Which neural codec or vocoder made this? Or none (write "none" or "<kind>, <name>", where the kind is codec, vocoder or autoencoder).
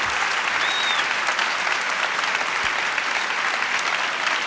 none